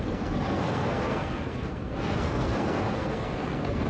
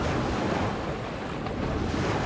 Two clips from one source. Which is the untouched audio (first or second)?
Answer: second